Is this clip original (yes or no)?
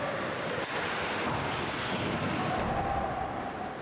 yes